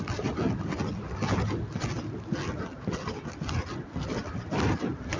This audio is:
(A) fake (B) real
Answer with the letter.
B